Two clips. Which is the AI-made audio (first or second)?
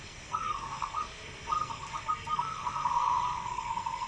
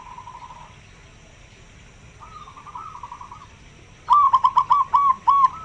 first